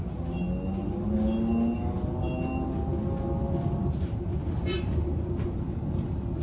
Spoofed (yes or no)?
no